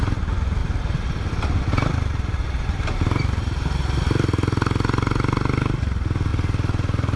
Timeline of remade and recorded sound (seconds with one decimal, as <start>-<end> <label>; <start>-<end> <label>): 0.0-0.6 recorded; 0.6-1.3 remade; 1.3-2.4 recorded; 2.4-4.0 remade; 4.0-7.2 recorded